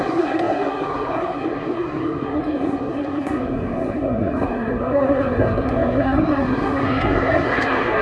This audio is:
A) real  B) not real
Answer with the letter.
B